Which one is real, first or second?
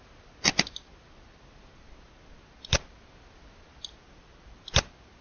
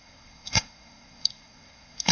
first